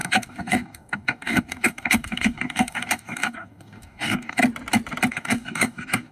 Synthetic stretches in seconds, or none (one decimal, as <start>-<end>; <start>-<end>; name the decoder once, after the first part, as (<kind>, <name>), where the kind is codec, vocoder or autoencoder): 0.0-4.4 (codec, DAC); 5.1-6.1